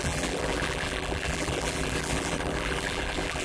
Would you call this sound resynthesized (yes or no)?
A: yes